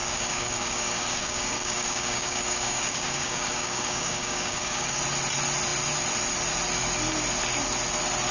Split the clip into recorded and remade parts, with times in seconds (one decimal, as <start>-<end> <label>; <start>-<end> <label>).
0.0-5.0 remade; 5.0-8.3 recorded